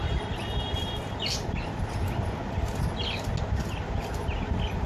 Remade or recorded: recorded